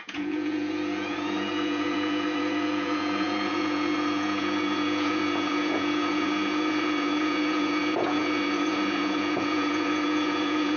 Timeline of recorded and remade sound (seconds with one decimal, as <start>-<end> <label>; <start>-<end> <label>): 0.0-10.8 remade